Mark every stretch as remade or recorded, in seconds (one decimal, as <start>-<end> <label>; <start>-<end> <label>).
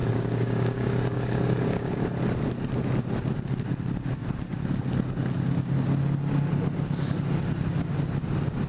0.0-2.0 remade; 2.0-8.7 recorded